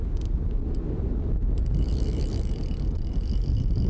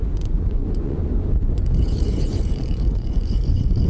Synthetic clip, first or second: second